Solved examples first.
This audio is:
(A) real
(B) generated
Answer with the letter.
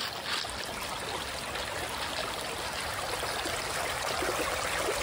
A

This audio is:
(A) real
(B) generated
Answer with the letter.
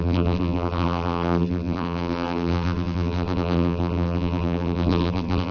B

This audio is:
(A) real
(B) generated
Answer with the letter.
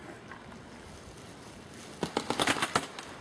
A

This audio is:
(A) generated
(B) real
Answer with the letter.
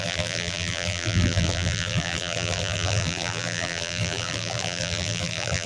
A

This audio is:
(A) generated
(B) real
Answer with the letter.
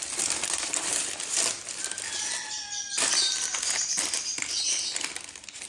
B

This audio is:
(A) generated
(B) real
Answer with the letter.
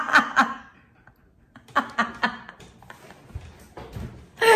B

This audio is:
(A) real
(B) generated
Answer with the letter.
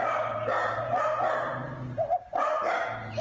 A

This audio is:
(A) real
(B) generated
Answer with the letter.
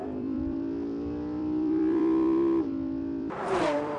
B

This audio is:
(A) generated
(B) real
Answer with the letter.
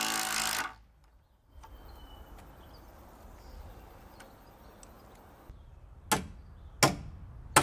B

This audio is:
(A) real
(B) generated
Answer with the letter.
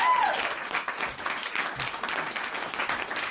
A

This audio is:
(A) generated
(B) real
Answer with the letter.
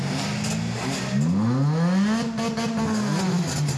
B